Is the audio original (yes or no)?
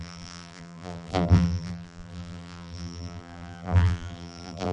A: no